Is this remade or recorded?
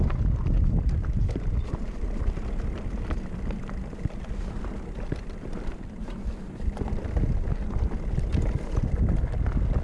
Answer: recorded